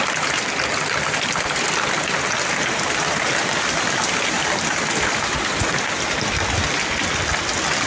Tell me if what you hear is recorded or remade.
recorded